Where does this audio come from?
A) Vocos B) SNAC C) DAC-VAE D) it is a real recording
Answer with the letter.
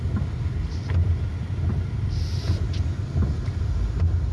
D